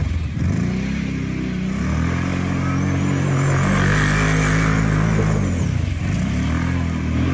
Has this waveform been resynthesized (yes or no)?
no